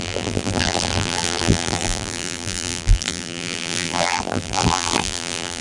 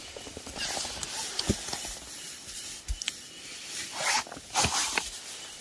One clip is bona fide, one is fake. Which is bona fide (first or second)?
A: second